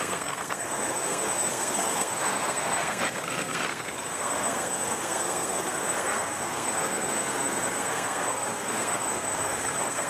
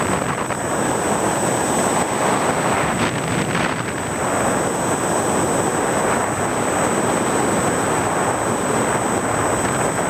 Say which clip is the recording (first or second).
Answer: second